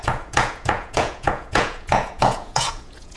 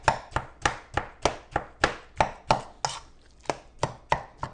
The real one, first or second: second